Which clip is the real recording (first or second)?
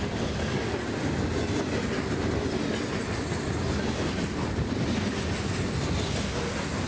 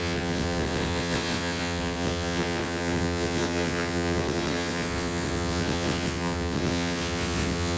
first